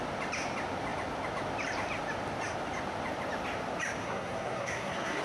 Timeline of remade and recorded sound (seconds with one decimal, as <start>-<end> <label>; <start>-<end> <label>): 0.0-4.0 recorded; 4.0-5.2 remade